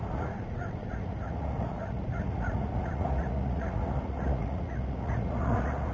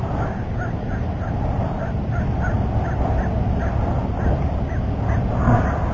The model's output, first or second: first